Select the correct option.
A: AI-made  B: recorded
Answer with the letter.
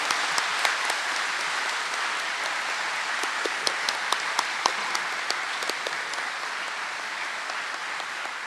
B